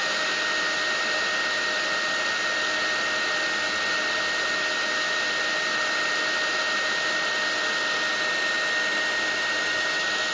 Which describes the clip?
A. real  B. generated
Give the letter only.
A